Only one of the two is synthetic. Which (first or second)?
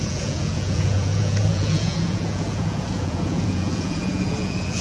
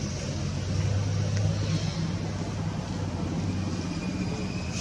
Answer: first